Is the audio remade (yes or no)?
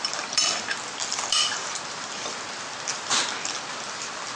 no